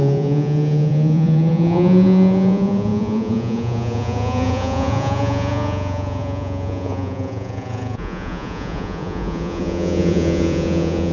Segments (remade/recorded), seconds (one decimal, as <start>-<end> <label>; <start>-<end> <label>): 0.0-11.1 remade

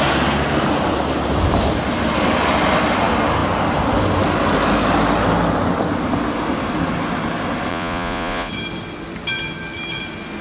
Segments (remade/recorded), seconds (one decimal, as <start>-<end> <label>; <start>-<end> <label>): 0.0-7.7 recorded; 7.7-8.5 remade; 8.5-10.4 recorded

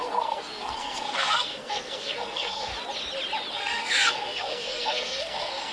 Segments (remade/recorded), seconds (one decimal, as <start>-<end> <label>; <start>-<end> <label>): 0.0-2.7 remade; 2.7-3.5 recorded; 3.5-5.7 remade

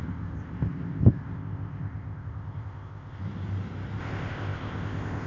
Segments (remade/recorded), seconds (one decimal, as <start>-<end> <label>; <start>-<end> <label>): 0.0-3.2 remade; 3.2-4.0 recorded; 4.0-5.3 remade

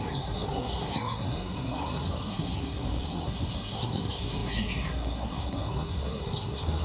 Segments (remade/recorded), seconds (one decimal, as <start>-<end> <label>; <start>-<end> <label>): 0.0-6.8 remade

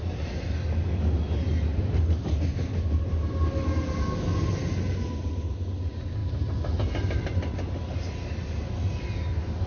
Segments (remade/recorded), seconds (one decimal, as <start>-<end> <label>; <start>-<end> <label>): 0.0-9.7 recorded

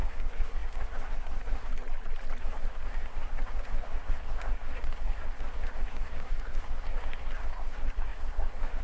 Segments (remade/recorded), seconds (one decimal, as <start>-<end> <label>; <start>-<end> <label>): 0.0-1.7 remade; 1.7-2.4 recorded; 2.4-8.8 remade

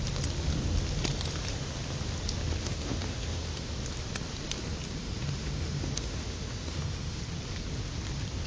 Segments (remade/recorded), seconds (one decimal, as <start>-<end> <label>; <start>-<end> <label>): 0.0-2.6 recorded; 2.6-3.7 remade; 3.7-5.0 recorded; 5.0-7.2 remade; 7.2-8.5 recorded